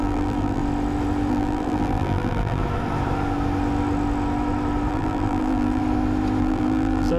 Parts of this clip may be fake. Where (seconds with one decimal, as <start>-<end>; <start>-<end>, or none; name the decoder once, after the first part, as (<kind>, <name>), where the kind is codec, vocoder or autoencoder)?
0.0-0.6 (vocoder, BigVGAN v2); 1.3-2.6; 4.9-5.8; 6.4-7.2